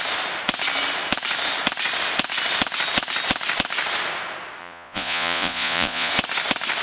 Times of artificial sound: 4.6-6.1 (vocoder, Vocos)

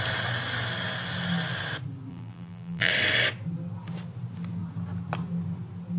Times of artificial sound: 2.1-2.9 (vocoder, BigVGAN v2)

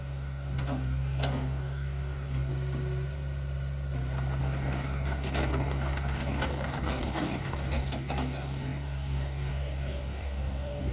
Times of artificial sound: 0.0-2.5 (codec, DAC); 4.4-10.9

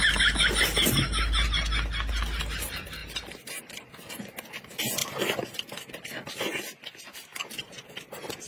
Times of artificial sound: 5.0-6.8 (vocoder, BigVGAN v2); 7.3-8.5

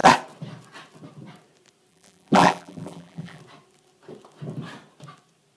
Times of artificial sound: 1.9-3.4 (vocoder, BigVGAN v2)

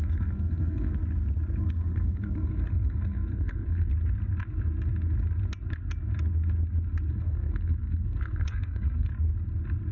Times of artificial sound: 0.0-1.0 (codec, SNAC); 1.6-3.9; 7.1-9.1

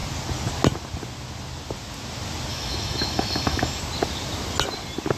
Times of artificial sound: 2.5-3.8 (autoencoder, DAC-VAE)

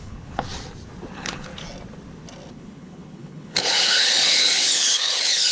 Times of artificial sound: 0.0-0.5 (codec, HILCodec); 1.1-1.5; 2.5-5.5